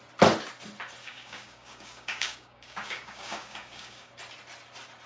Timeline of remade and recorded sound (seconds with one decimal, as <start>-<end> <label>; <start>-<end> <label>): 0.0-1.0 recorded; 1.0-4.1 remade; 4.1-5.1 recorded